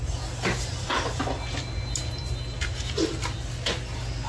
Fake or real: real